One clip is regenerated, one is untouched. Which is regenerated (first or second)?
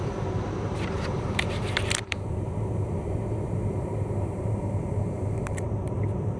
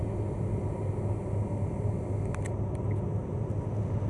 first